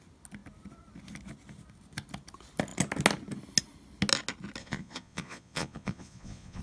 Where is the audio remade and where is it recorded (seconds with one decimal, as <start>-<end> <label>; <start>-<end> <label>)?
0.0-4.6 recorded; 4.6-6.6 remade